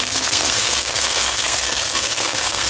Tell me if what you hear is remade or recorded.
remade